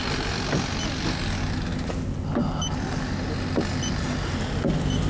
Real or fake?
real